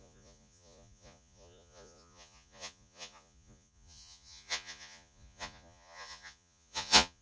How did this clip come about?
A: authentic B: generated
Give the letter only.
B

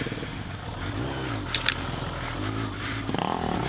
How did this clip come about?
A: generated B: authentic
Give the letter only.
B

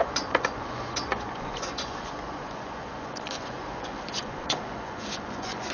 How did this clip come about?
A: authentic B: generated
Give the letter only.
B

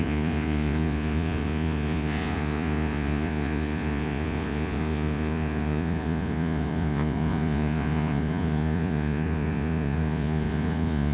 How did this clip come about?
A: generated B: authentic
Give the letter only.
A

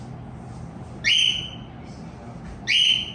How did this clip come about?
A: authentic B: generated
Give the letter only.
A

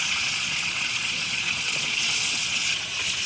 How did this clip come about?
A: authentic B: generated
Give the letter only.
B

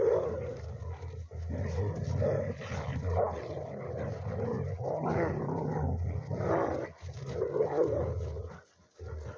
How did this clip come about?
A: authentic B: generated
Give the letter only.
A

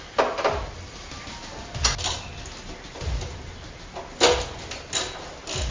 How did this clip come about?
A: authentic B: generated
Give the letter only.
A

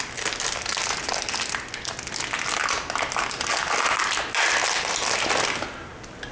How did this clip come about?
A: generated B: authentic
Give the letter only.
B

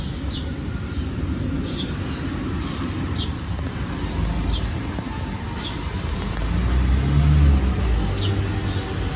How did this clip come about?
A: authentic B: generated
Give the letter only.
A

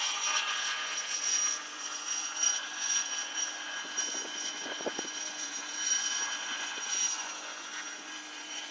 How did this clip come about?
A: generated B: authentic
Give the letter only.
A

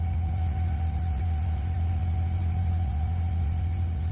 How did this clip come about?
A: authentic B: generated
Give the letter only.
B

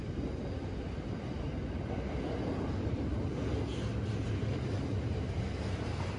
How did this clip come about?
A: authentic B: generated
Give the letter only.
A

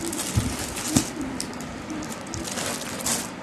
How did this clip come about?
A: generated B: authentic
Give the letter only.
B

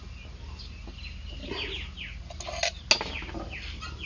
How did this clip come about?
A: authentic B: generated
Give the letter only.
A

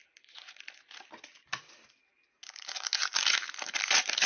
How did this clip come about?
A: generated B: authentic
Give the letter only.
B